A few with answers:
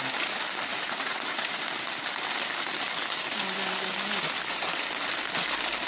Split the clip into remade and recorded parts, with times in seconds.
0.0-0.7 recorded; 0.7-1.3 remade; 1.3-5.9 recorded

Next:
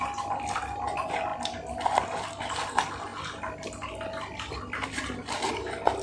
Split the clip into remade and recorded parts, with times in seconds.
0.0-6.0 recorded

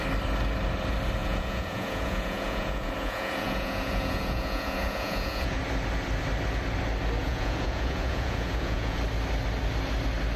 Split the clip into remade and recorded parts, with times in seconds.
0.0-1.2 recorded; 1.2-5.6 remade; 5.6-7.2 recorded; 7.2-9.0 remade; 9.0-10.4 recorded

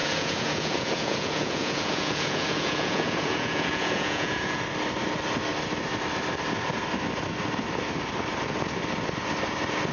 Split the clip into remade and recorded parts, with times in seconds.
0.0-4.6 remade; 4.6-9.9 recorded